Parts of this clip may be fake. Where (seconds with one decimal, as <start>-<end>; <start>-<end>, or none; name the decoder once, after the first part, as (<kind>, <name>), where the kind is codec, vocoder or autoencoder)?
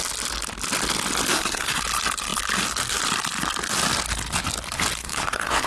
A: 1.3-1.8 (codec, SNAC); 5.0-5.7